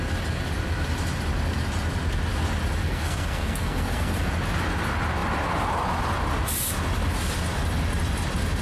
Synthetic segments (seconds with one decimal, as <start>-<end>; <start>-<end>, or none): 2.8-4.3